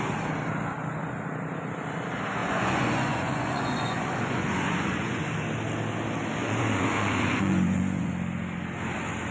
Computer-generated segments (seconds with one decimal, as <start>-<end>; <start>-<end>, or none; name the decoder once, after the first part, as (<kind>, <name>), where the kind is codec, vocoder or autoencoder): 2.4-5.3 (vocoder, Vocos); 6.4-8.1